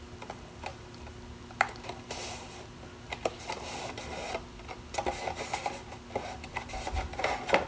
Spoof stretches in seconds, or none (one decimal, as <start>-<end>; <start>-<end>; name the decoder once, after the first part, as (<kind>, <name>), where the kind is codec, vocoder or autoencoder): none